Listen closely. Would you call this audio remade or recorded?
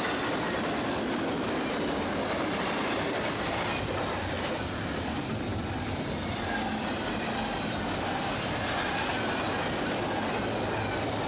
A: recorded